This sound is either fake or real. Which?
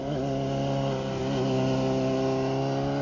real